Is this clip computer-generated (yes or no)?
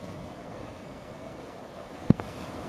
yes